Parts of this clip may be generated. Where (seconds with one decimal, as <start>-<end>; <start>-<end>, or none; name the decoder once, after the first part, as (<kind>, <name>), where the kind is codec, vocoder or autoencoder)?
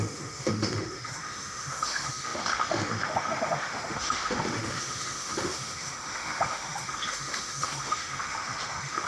0.0-9.1 (autoencoder, DAC-VAE)